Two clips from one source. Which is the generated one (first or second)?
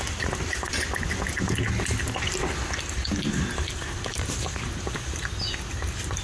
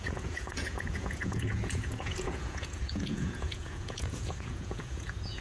second